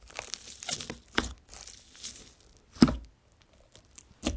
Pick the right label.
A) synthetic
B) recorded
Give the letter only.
B